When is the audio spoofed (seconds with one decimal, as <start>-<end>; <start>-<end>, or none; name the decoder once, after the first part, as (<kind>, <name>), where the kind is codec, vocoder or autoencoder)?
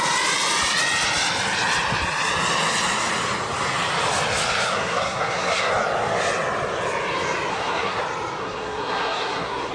4.7-5.7 (codec, SNAC); 7.5-8.0; 8.4-9.7